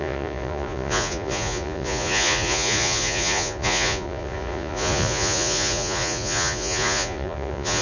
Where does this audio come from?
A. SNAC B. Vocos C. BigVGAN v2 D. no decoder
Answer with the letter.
B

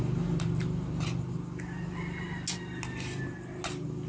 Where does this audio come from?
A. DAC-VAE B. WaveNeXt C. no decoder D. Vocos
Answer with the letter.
C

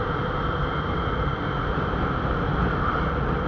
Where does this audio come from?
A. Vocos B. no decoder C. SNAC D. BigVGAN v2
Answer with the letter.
B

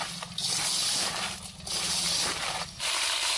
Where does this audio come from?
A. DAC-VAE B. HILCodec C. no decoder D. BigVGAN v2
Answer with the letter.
C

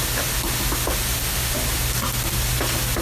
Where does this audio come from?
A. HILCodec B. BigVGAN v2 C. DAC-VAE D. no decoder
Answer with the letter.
D